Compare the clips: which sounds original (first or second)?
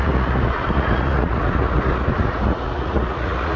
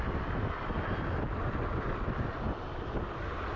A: second